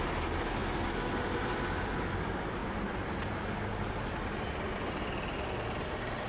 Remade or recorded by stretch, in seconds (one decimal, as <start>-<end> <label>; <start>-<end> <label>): 0.0-6.3 recorded